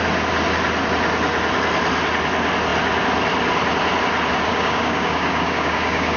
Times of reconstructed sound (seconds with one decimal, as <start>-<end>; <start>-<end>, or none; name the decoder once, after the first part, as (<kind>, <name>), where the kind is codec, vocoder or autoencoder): 4.5-6.2 (codec, DAC)